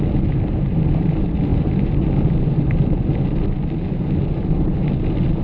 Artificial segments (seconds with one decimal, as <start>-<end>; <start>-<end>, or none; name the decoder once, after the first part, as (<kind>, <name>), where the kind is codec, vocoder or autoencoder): none